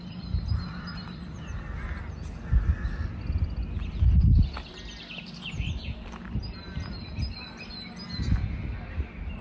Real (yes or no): yes